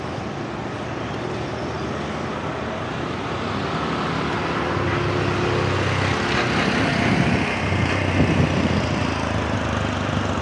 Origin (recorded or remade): recorded